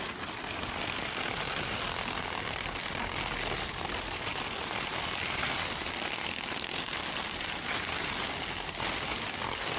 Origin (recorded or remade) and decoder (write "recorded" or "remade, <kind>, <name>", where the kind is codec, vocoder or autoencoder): recorded